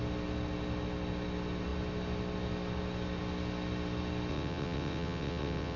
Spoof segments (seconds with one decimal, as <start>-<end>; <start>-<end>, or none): 4.3-5.8

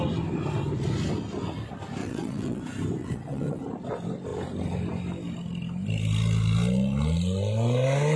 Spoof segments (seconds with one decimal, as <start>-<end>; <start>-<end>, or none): 2.0-2.6; 3.0-3.6